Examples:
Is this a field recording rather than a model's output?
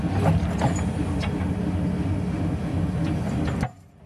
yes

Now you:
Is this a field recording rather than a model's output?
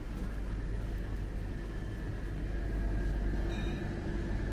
yes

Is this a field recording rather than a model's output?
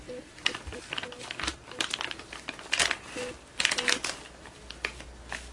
yes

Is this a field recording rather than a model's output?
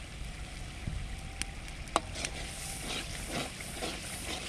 yes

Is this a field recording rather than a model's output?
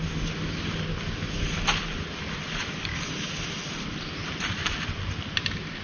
yes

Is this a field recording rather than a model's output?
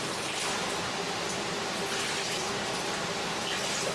yes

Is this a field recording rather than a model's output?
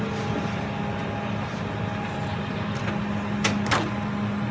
yes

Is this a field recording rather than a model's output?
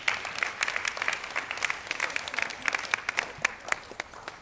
yes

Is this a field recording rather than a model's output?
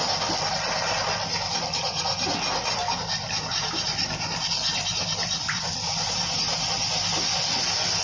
yes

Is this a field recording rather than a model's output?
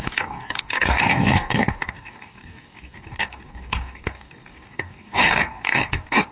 no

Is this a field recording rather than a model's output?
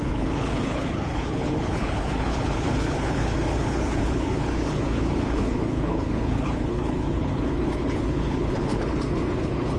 no